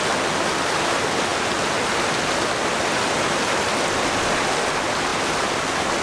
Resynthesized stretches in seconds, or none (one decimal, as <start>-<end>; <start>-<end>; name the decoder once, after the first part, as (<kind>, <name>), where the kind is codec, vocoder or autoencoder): none